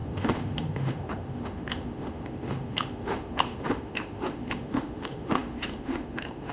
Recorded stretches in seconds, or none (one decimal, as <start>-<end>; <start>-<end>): none